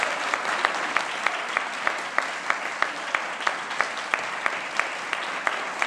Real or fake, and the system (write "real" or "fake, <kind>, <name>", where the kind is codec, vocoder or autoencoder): real